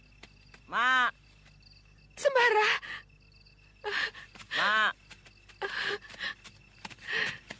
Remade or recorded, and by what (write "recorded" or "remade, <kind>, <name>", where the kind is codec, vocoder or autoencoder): recorded